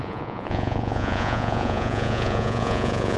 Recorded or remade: remade